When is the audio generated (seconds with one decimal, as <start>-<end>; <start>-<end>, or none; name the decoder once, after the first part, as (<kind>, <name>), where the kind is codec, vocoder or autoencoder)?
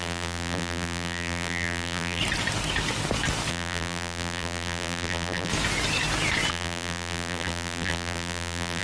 0.0-2.2 (vocoder, BigVGAN v2); 3.5-5.5; 6.5-8.8